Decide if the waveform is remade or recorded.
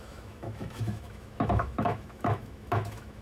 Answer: remade